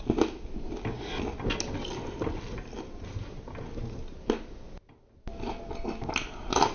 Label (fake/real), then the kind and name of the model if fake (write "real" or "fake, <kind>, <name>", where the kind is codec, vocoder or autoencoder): real